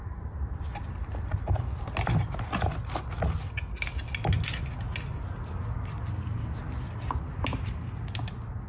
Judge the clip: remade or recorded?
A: recorded